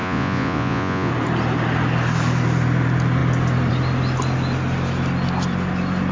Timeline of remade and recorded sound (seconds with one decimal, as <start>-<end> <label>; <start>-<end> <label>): 0.0-1.1 remade; 1.1-6.1 recorded